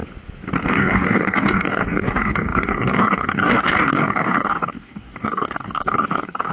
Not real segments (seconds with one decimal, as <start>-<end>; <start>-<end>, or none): 0.7-6.5